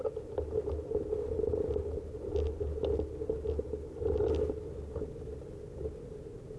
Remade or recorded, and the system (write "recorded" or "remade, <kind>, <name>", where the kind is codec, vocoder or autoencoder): recorded